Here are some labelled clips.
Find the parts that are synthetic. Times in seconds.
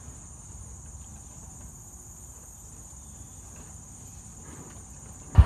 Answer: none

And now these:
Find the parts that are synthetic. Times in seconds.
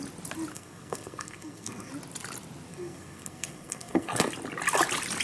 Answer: 0.5-1.9; 2.7-4.3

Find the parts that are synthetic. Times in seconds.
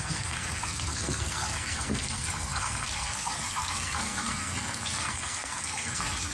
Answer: 0.0-6.3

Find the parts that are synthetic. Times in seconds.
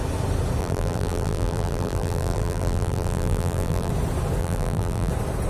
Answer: 0.6-3.9; 4.4-5.1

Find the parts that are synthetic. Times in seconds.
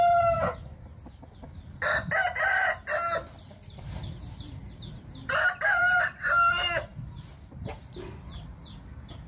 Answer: none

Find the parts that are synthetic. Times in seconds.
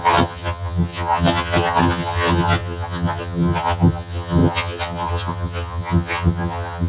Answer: 0.0-6.9